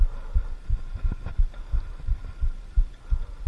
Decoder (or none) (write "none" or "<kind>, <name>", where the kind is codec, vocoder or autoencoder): none